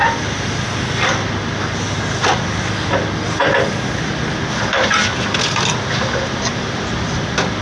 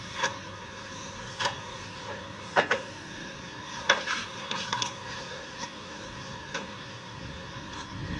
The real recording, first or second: first